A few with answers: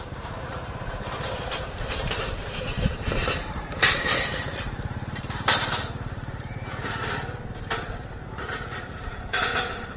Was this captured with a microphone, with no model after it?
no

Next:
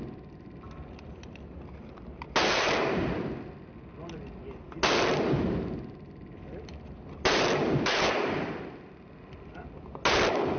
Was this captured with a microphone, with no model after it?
yes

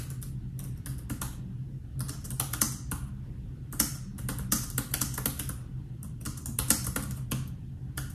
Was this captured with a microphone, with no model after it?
yes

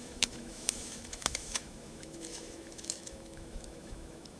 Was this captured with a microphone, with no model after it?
no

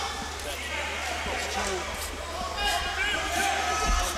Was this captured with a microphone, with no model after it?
yes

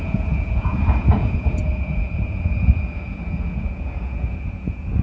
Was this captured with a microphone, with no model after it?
no